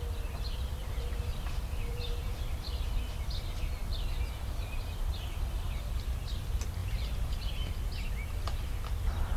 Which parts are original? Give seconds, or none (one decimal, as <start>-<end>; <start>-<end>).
0.0-0.8; 2.9-6.8; 7.7-9.4